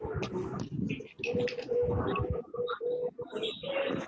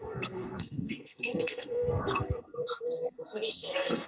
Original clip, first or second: first